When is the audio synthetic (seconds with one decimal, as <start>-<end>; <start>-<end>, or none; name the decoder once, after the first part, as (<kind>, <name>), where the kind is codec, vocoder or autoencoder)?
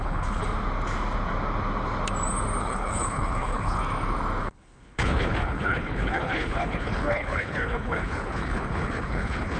0.0-0.4 (codec, HILCodec); 2.6-3.8; 4.4-9.6